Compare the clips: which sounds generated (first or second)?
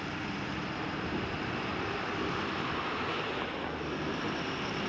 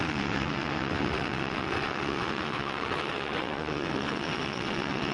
second